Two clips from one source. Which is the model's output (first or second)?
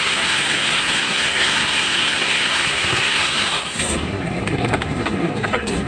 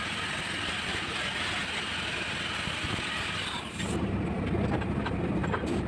first